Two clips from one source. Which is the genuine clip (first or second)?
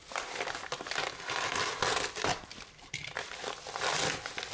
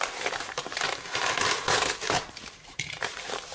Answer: first